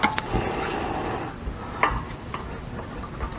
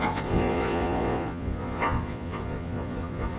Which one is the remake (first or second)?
second